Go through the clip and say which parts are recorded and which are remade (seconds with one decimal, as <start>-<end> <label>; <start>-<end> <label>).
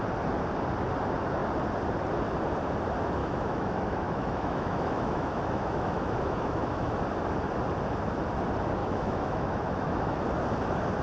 0.0-3.2 recorded; 3.2-6.9 remade; 6.9-8.8 recorded; 8.8-10.2 remade; 10.2-11.0 recorded